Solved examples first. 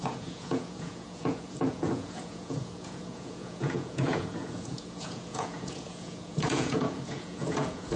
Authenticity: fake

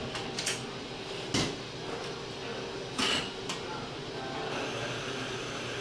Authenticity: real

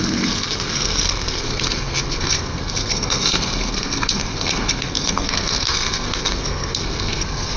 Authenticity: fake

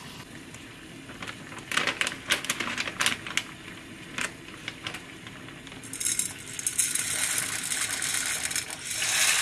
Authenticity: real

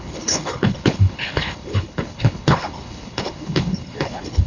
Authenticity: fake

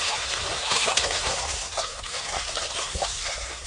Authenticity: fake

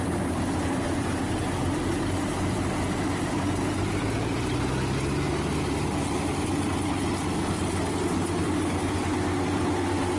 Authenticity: real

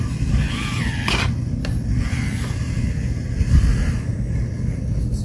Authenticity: real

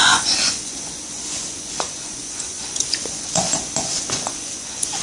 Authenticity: fake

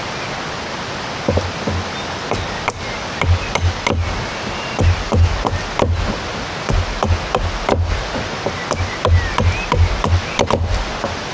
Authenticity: real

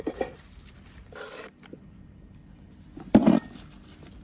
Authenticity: real